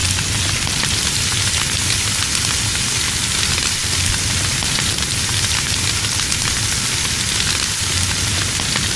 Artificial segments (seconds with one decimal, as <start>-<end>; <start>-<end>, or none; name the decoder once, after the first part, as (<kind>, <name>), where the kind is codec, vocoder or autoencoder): none